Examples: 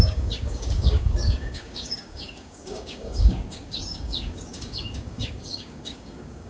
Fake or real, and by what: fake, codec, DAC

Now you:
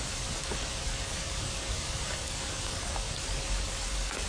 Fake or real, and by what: fake, codec, DAC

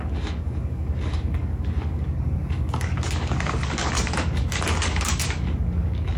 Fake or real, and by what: fake, codec, DAC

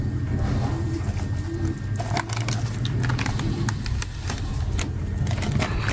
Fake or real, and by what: real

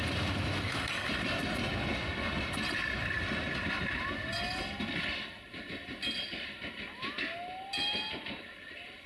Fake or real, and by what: real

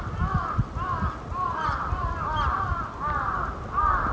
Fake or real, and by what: real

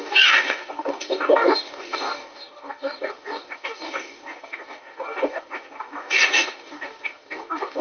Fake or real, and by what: fake, codec, DAC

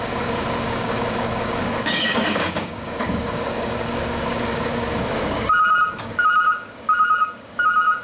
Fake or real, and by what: fake, codec, DAC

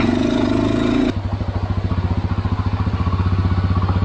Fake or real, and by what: real